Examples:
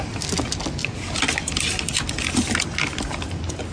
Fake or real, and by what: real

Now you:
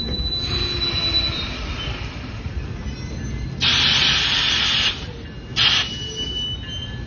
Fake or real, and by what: real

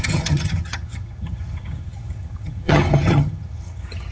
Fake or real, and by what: fake, vocoder, HiFi-GAN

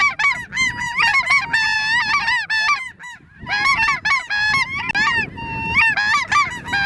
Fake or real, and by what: real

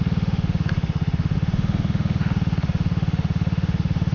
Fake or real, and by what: fake, autoencoder, DAC-VAE